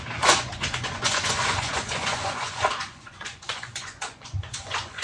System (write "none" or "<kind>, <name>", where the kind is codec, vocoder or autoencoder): vocoder, Vocos